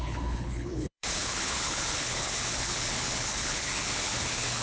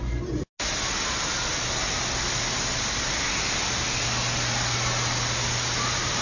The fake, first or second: first